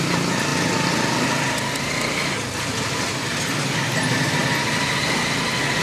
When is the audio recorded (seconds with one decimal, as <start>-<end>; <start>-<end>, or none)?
0.0-5.8